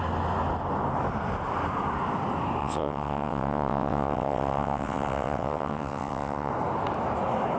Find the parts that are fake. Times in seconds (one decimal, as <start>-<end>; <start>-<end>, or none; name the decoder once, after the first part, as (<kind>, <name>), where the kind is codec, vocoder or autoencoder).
2.6-6.5 (vocoder, WaveNeXt)